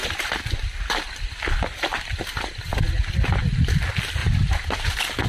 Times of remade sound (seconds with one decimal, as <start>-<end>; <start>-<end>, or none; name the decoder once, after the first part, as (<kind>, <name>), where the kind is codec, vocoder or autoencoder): 4.2-4.7 (vocoder, BigVGAN v2)